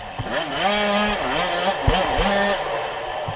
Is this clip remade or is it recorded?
recorded